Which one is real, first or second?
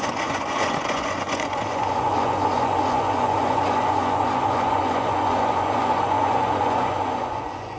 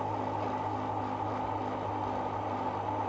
second